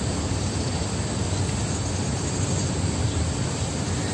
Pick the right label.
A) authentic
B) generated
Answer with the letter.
A